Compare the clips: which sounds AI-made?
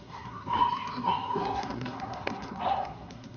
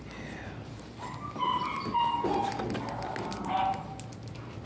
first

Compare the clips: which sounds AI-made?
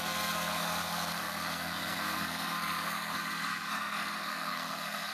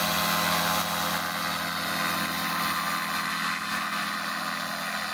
first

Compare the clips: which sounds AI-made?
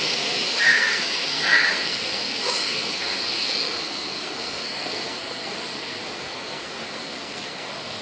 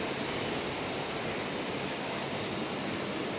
first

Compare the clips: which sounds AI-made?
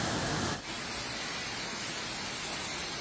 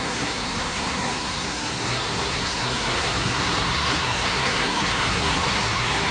second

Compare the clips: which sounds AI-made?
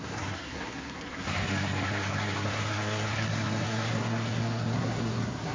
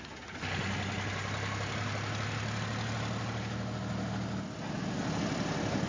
first